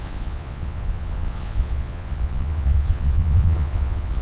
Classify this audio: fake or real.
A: fake